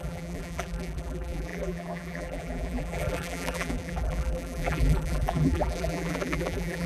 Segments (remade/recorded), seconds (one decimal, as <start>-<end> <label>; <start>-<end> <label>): 0.0-6.9 remade